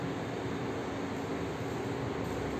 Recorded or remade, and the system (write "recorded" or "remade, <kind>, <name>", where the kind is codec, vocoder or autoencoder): recorded